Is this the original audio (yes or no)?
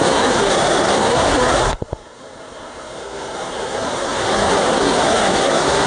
no